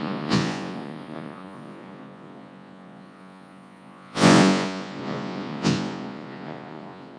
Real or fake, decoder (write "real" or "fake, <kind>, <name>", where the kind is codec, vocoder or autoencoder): fake, vocoder, Vocos